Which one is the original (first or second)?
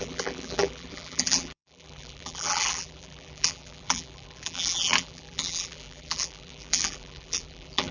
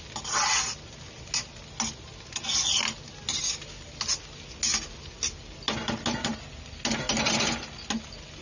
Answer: second